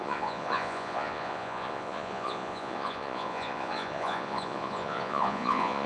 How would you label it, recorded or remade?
remade